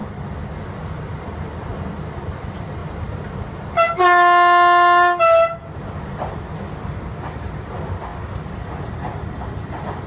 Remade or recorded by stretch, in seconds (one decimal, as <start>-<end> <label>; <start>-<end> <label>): 0.0-10.1 recorded